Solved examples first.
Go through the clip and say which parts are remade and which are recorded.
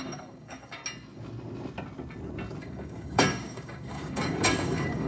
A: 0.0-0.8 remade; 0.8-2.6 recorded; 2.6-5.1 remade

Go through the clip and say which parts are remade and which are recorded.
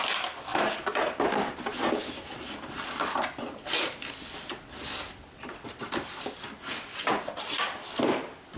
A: 0.0-8.6 recorded